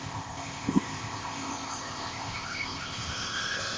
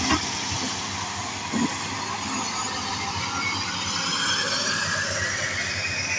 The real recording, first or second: second